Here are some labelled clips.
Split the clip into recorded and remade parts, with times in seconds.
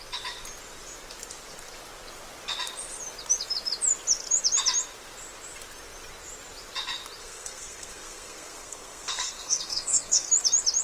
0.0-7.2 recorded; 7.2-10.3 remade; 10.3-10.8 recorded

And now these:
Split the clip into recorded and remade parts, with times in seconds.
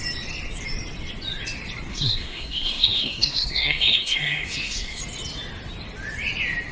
0.0-1.9 recorded; 1.9-5.0 remade; 5.0-6.7 recorded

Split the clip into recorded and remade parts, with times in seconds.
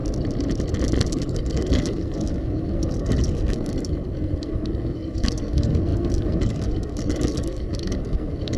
0.0-1.1 recorded; 1.1-8.6 remade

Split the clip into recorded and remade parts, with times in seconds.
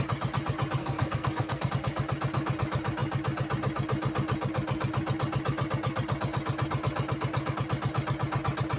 0.0-0.8 recorded; 0.8-1.7 remade; 1.7-8.8 recorded